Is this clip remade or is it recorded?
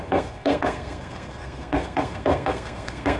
remade